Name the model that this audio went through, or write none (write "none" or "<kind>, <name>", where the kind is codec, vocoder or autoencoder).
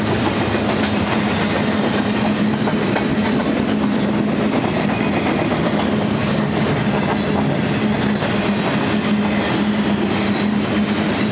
none